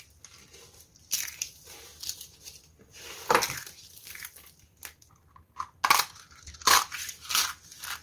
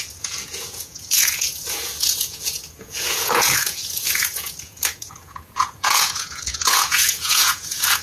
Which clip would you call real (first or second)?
first